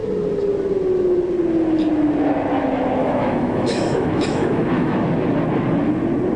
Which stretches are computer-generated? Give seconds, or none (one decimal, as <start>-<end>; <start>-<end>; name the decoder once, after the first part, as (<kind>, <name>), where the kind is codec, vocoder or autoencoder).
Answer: 3.0-4.9 (autoencoder, DAC-VAE)